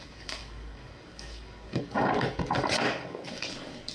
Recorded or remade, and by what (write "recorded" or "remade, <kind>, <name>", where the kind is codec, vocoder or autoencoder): remade, codec, DAC